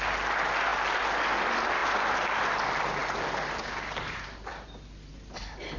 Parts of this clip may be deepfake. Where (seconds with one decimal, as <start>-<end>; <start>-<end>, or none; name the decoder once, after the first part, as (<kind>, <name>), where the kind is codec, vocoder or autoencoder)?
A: none